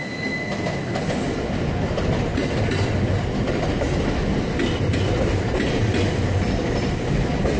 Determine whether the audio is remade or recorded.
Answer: recorded